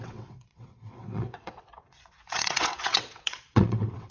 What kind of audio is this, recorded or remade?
remade